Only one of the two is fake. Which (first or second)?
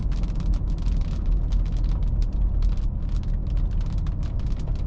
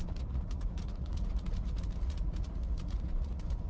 second